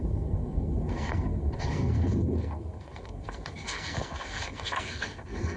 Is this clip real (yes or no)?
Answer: no